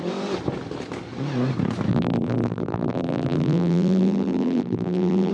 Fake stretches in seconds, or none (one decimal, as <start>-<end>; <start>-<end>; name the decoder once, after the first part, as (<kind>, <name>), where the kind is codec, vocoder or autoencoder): 1.9-5.3 (vocoder, BigVGAN v2)